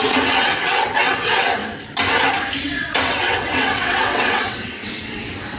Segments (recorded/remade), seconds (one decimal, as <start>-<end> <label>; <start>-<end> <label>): 0.0-1.6 remade; 1.6-2.6 recorded; 2.6-5.6 remade